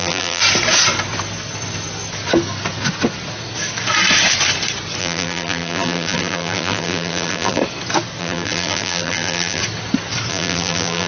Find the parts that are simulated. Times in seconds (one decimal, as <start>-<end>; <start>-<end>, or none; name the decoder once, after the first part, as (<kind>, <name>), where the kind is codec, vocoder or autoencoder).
0.0-0.4 (vocoder, BigVGAN v2); 5.0-7.6; 8.2-9.6; 10.3-11.1